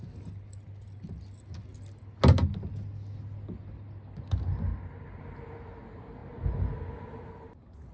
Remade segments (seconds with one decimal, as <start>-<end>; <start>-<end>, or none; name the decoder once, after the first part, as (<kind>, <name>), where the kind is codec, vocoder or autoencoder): none